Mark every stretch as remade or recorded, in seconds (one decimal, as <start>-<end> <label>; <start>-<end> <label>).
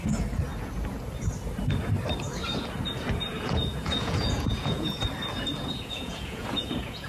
0.0-3.3 recorded; 3.3-5.0 remade; 5.0-5.5 recorded; 5.5-7.1 remade